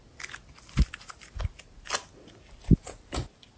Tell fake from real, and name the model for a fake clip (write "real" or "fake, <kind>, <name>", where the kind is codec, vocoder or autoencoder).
real